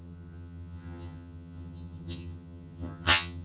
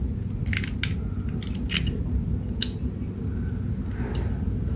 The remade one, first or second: first